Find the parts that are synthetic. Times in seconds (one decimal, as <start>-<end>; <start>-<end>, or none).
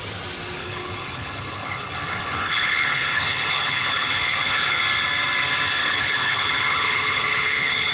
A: 0.6-4.8; 5.8-7.9